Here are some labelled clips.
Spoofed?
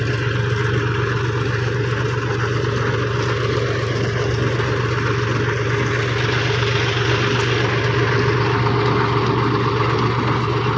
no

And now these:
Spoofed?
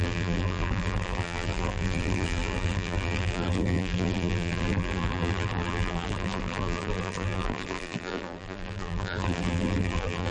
yes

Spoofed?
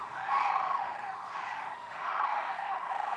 yes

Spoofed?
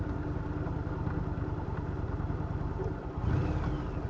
no